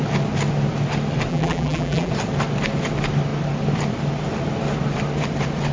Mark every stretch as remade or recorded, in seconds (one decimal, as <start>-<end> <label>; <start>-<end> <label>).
0.0-1.3 recorded; 1.3-2.1 remade; 2.1-5.7 recorded